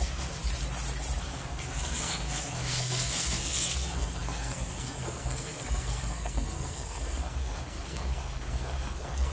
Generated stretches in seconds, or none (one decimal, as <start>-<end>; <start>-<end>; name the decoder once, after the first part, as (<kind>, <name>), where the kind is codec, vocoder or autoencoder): 0.0-0.4 (codec, SNAC); 1.2-9.3